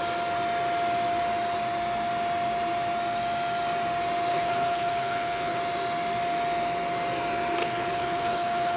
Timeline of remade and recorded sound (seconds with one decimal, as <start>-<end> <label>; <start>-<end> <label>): 0.0-4.3 recorded; 4.3-5.6 remade; 5.6-7.6 recorded; 7.6-8.8 remade